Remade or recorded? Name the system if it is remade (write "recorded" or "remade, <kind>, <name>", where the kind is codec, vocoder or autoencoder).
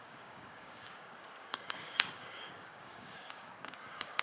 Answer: remade, codec, DAC